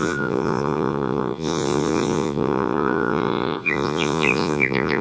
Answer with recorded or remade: remade